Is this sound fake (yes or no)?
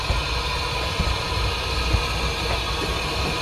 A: no